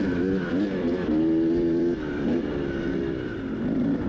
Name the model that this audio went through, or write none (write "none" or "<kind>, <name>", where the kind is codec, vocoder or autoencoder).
vocoder, BigVGAN v2